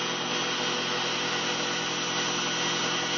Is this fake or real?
real